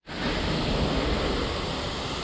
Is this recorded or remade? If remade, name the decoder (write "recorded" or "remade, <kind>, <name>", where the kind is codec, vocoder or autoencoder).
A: recorded